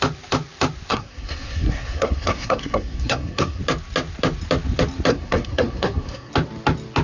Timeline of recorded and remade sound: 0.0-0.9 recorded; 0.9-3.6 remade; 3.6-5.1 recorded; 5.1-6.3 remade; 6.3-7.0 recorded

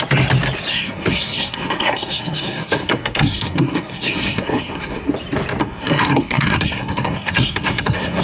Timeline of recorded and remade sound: 0.0-0.7 recorded; 0.7-5.1 remade; 5.1-5.6 recorded; 5.6-8.2 remade

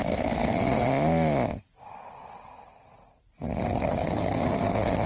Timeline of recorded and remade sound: 0.0-0.9 remade; 0.9-3.6 recorded; 3.6-5.1 remade

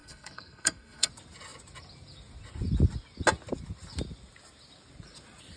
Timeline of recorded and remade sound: 0.0-1.1 remade; 1.1-5.6 recorded